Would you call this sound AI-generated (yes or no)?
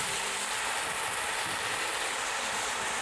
no